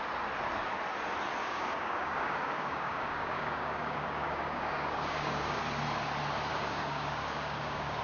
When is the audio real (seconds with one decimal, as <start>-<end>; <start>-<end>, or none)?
0.0-1.4; 5.6-6.5